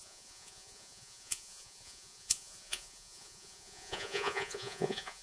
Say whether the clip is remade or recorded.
remade